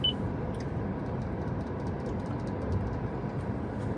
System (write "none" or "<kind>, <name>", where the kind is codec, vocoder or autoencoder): none